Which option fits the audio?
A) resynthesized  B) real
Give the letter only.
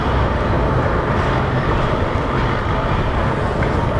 B